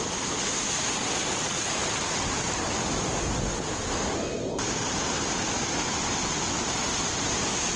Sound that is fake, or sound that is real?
real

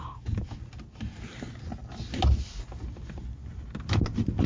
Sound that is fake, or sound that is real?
real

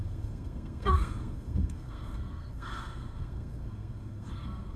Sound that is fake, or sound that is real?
fake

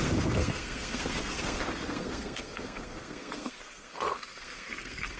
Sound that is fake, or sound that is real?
fake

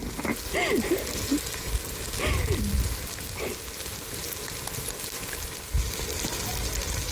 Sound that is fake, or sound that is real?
real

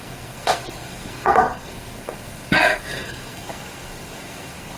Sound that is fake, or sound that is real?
fake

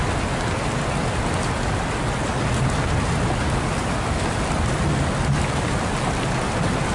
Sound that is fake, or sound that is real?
real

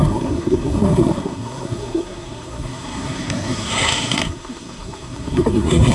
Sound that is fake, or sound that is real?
fake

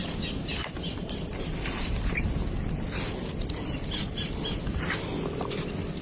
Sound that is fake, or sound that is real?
real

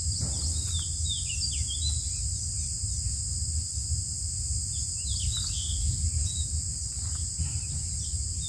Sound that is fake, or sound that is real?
real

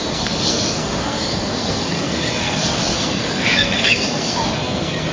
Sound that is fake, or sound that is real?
fake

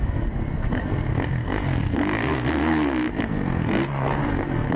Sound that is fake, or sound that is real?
fake